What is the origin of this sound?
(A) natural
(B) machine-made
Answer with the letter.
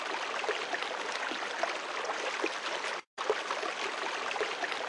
A